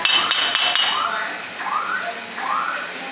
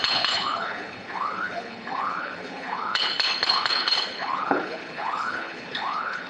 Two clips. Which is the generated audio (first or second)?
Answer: second